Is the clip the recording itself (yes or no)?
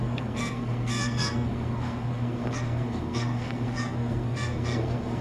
no